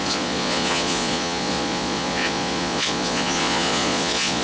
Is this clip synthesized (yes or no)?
yes